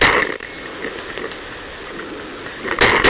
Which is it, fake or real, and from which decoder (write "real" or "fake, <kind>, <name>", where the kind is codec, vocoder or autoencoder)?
real